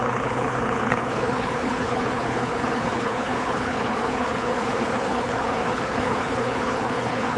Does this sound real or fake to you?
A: fake